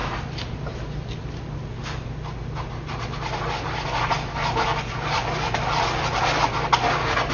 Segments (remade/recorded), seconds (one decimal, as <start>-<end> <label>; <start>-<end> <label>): 0.0-4.3 remade; 4.3-7.3 recorded

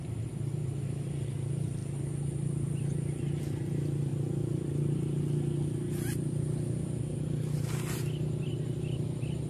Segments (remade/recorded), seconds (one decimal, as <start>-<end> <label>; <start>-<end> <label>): 0.0-1.8 remade; 1.8-3.4 recorded; 3.4-4.1 remade; 4.1-9.5 recorded

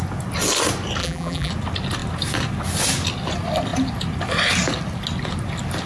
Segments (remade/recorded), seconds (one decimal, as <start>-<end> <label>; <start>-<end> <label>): 0.0-1.0 recorded; 1.0-1.5 remade; 1.5-5.9 recorded